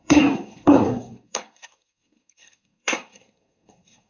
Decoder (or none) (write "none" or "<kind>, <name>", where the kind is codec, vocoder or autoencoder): codec, SNAC